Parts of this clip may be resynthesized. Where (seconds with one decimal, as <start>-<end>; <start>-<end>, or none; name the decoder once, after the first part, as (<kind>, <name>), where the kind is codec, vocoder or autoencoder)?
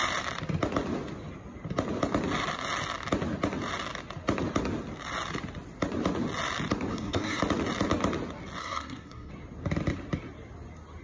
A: 6.9-7.4 (codec, SNAC); 8.6-9.3